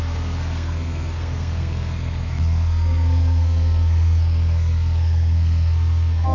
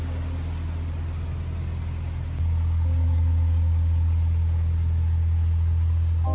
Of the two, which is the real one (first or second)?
second